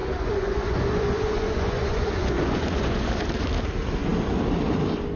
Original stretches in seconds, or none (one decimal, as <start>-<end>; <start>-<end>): 3.1-5.2

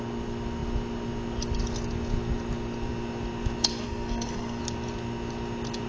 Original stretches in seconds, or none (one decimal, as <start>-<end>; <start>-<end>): 0.0-3.7; 4.6-5.9

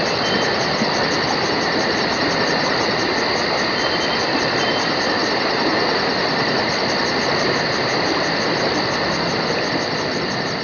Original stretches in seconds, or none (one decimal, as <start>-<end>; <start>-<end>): 0.0-10.6

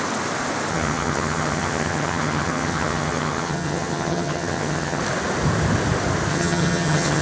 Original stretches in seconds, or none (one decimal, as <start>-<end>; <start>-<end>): 0.0-0.7; 5.0-6.3

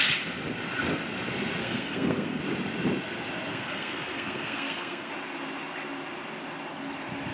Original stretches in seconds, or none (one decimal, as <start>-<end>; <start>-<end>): 0.0-1.6; 2.4-3.5; 5.1-7.3